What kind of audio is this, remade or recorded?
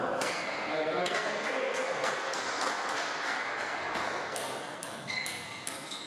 remade